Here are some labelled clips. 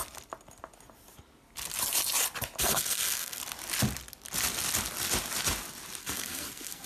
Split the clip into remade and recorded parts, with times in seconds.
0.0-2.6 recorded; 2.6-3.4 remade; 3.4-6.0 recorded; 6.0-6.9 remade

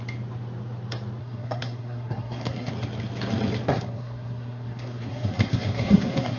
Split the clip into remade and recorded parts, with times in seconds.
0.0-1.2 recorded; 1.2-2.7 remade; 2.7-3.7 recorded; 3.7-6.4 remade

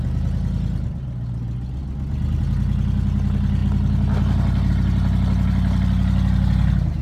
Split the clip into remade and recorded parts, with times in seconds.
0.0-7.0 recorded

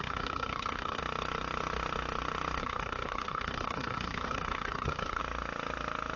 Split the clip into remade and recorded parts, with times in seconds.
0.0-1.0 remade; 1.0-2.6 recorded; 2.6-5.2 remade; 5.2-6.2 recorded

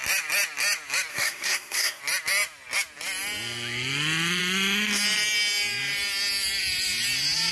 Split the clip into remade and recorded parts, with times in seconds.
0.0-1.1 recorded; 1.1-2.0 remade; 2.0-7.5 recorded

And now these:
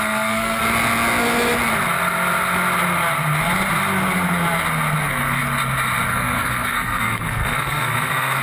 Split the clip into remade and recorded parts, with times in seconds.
0.0-0.6 remade; 0.6-5.0 recorded; 5.0-5.4 remade; 5.4-6.1 recorded; 6.1-8.4 remade

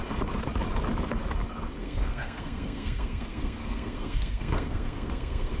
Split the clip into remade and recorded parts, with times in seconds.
0.0-1.8 recorded; 1.8-5.6 remade